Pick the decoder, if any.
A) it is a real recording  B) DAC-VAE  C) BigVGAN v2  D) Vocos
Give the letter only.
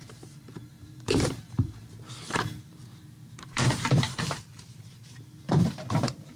C